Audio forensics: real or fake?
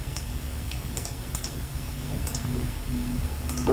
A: fake